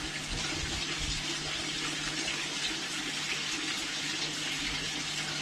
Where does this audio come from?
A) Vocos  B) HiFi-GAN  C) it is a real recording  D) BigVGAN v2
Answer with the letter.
C